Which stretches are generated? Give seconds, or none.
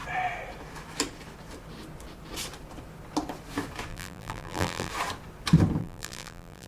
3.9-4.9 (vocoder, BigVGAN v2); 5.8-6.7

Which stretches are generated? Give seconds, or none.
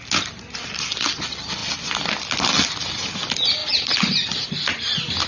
none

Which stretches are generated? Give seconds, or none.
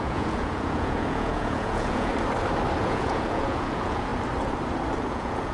0.0-2.1 (vocoder, Vocos); 2.8-4.1; 5.1-5.5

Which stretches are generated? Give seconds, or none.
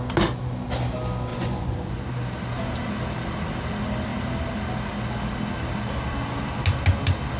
1.3-2.1 (vocoder, Vocos)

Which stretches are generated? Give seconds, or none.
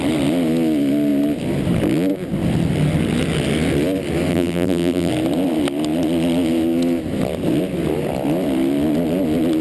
4.3-5.1 (vocoder, BigVGAN v2)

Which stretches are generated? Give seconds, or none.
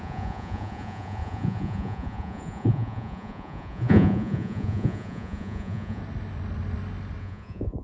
0.0-6.0 (vocoder, Vocos); 7.2-7.8